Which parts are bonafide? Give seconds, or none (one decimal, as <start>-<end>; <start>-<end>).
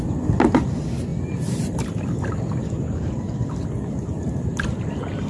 0.0-5.3